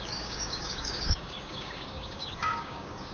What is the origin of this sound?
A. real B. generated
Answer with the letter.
B